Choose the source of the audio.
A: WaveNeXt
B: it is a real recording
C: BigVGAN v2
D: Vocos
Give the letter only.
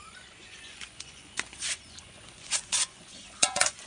D